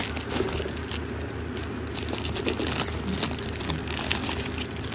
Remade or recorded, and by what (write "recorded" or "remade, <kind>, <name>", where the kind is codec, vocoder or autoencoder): recorded